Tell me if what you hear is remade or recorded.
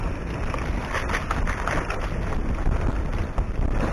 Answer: recorded